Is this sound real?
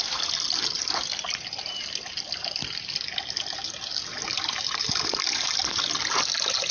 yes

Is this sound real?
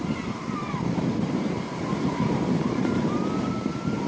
no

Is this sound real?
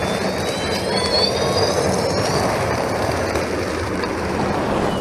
yes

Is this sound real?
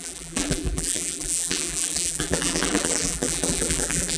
no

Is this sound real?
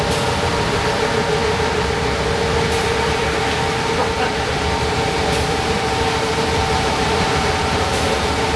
no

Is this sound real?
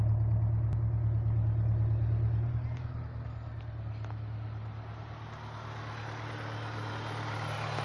yes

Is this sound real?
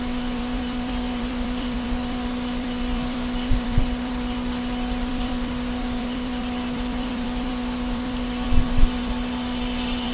no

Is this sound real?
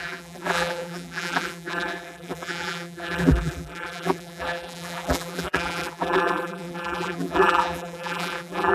no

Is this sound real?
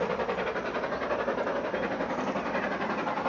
yes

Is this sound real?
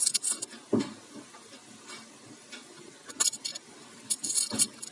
yes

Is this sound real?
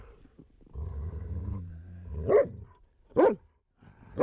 no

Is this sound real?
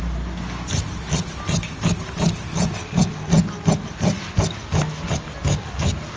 yes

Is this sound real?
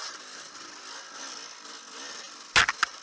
yes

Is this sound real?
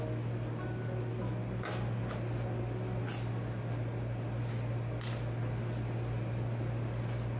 yes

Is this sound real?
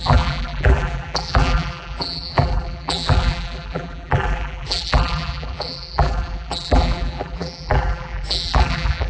no